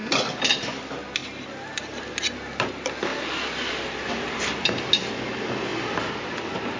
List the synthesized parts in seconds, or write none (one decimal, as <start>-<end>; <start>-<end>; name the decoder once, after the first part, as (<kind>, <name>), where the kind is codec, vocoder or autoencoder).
none